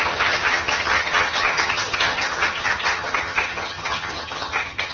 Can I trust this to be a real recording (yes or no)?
no